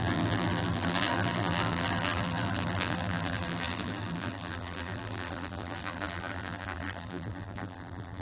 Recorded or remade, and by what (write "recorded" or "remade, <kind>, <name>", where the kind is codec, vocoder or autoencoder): remade, vocoder, BigVGAN v2